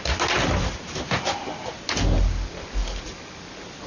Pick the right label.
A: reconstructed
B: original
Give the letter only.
B